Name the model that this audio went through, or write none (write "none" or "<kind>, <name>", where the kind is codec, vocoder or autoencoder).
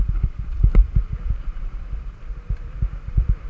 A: vocoder, BigVGAN v2